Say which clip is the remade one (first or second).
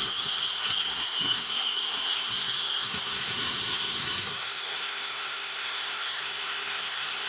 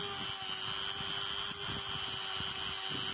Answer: first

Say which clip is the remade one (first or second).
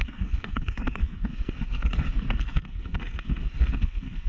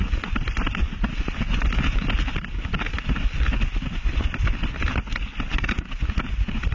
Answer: first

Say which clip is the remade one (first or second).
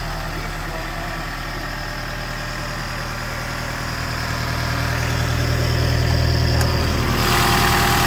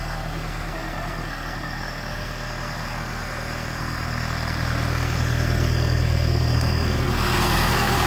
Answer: second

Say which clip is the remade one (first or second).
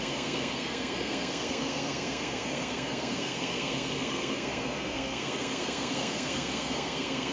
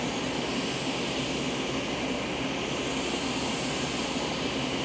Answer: first